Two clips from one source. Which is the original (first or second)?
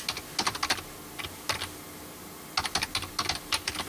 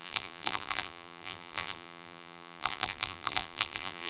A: first